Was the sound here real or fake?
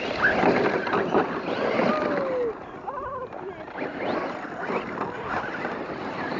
real